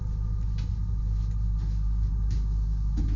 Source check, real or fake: real